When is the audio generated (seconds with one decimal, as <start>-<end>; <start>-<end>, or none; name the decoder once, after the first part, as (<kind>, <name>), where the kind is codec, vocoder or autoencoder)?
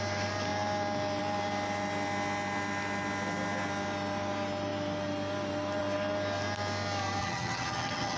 7.2-8.2 (vocoder, HiFi-GAN)